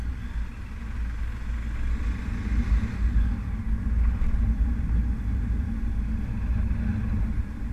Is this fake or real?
real